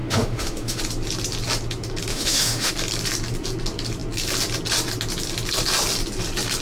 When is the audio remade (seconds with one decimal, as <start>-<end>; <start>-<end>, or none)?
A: 0.0-0.8; 2.1-2.7